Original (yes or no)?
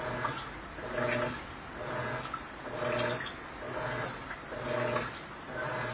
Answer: yes